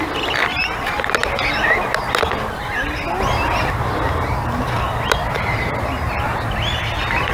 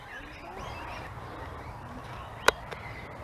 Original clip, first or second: first